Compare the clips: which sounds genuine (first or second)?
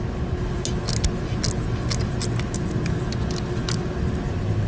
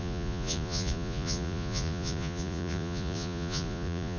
first